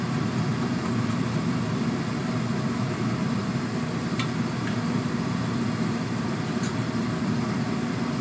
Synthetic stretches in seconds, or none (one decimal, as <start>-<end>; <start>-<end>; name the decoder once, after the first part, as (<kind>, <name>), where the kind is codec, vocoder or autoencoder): 0.0-0.5 (vocoder, BigVGAN v2); 3.4-8.2